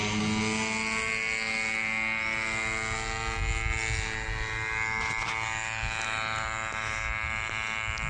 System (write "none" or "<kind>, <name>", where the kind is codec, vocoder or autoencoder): none